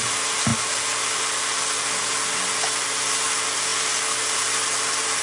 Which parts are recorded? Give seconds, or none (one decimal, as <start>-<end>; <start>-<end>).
0.0-5.2